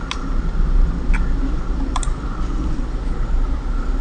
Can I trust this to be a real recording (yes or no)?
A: yes